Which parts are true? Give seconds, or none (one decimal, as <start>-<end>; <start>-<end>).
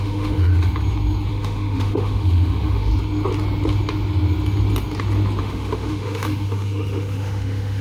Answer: 0.5-1.3; 2.9-5.4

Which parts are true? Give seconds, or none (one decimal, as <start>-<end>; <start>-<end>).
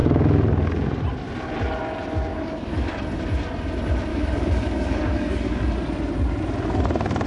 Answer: 0.0-2.3; 2.9-4.1; 5.6-7.3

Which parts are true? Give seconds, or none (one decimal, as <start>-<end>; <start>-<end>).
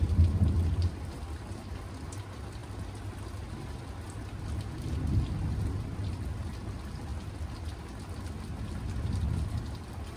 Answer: 0.0-10.2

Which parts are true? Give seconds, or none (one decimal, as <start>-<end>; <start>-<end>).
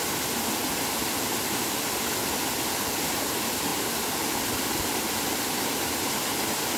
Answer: 0.6-2.3; 3.7-4.3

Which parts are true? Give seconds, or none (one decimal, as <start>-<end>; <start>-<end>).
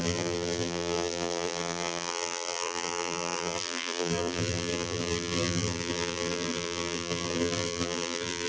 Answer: none